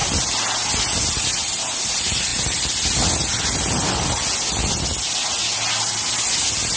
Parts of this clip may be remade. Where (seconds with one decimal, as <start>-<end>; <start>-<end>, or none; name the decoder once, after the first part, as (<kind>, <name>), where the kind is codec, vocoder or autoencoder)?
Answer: none